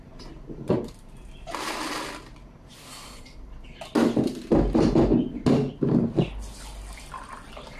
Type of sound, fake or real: real